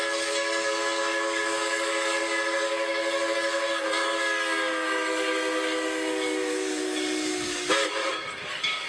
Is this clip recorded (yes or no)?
no